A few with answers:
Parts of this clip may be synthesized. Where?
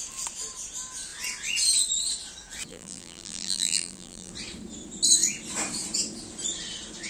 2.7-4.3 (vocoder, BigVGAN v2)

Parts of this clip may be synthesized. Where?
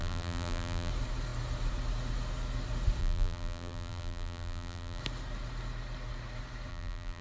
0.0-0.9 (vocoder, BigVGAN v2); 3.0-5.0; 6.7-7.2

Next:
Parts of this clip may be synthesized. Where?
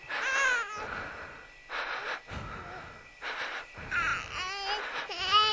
0.0-0.5 (vocoder, BigVGAN v2); 3.2-4.1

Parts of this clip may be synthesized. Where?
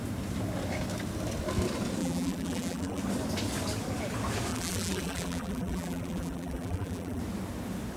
2.0-3.0 (vocoder, BigVGAN v2); 4.5-7.2